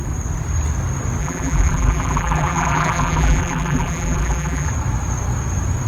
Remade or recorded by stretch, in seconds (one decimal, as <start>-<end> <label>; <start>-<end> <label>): 0.0-1.2 recorded; 1.2-4.7 remade; 4.7-5.9 recorded